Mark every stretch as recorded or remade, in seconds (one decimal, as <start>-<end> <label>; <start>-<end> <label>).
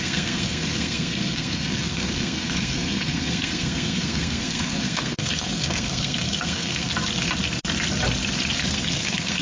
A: 0.0-6.9 remade; 6.9-8.6 recorded; 8.6-9.4 remade